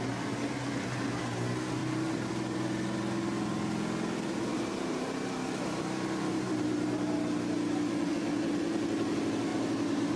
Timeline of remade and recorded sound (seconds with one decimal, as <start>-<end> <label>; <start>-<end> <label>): 0.0-1.8 recorded; 1.8-2.3 remade; 2.3-4.5 recorded; 4.5-7.1 remade; 7.1-9.5 recorded; 9.5-10.2 remade